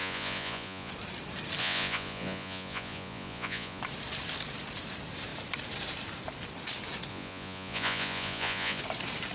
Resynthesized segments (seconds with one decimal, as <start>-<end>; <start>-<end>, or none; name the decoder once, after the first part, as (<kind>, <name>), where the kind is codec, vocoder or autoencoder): 0.0-0.9 (vocoder, Vocos); 1.6-3.8; 7.1-8.8